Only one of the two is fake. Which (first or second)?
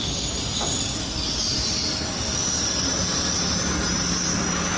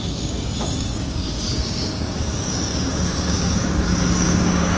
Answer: second